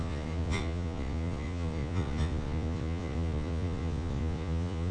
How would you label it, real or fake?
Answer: fake